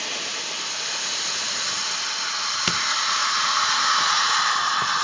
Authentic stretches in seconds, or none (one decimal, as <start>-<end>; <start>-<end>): 0.0-3.2; 4.3-5.0